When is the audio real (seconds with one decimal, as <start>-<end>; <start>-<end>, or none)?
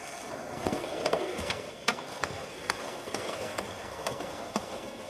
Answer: none